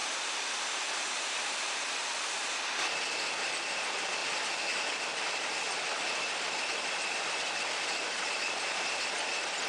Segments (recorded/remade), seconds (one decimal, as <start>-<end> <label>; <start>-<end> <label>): 0.0-0.6 remade; 0.6-4.2 recorded; 4.2-5.3 remade; 5.3-9.7 recorded